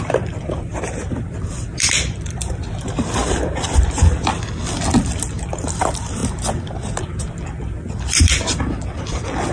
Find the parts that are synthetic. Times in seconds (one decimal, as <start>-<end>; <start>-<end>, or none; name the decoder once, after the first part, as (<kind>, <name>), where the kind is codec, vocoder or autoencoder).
0.0-6.2 (vocoder, BigVGAN v2); 7.0-9.5